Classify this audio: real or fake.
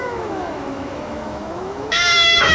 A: fake